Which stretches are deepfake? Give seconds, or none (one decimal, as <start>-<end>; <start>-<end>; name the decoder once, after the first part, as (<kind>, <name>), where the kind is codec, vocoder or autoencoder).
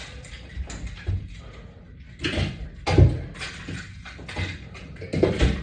none